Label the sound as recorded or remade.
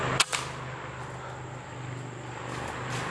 recorded